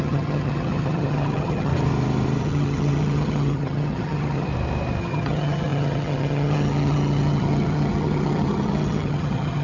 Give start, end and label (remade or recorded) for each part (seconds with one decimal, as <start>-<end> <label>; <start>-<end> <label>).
0.0-1.7 remade; 1.7-2.4 recorded; 2.4-4.5 remade; 4.5-5.0 recorded; 5.0-9.6 remade